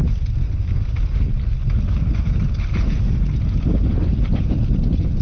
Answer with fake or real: real